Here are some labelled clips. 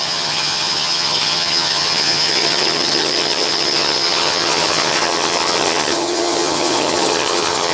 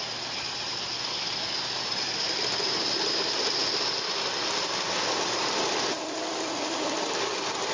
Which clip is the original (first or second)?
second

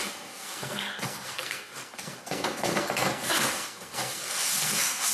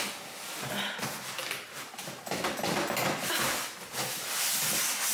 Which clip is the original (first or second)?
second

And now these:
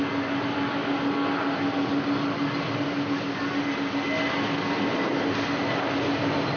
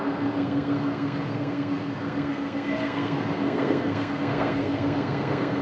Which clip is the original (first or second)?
first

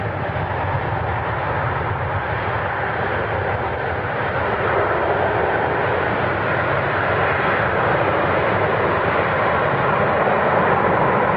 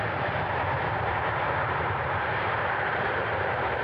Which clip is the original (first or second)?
first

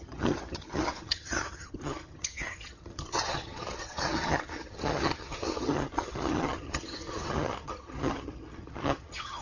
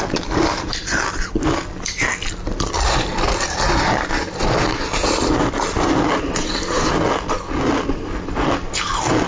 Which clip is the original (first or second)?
second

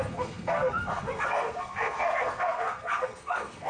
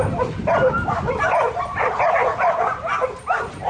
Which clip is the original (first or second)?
second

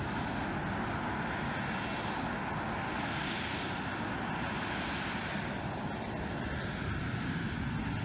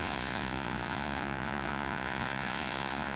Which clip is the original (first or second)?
first